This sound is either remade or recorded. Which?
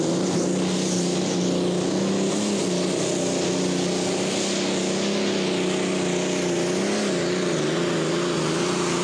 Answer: recorded